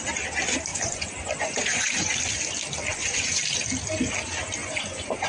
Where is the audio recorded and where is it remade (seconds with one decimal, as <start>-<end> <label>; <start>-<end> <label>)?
0.0-0.7 recorded; 0.7-2.1 remade; 2.1-2.9 recorded; 2.9-3.4 remade; 3.4-4.6 recorded; 4.6-5.3 remade